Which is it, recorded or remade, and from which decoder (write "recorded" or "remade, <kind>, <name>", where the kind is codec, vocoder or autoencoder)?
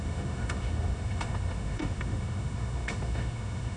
remade, autoencoder, DAC-VAE